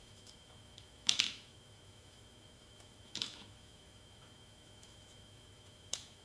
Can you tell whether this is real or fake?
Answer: fake